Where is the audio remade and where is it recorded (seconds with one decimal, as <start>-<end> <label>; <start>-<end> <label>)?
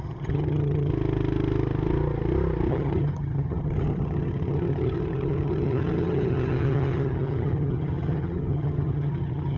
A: 0.0-0.9 remade; 0.9-2.7 recorded; 2.7-9.6 remade